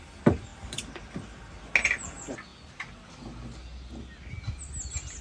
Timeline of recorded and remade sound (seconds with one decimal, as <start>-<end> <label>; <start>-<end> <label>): 0.0-5.2 recorded